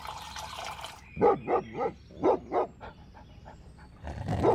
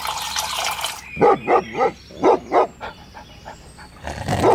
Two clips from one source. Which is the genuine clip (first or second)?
second